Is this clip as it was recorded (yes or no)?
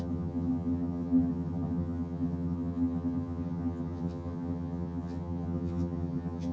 no